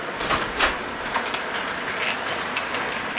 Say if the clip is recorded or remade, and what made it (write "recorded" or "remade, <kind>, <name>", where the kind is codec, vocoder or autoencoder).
recorded